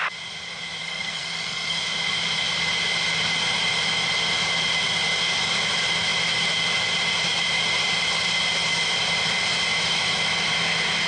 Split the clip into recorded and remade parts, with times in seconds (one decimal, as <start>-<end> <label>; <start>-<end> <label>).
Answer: 0.0-0.8 recorded; 0.8-1.8 remade; 1.8-11.1 recorded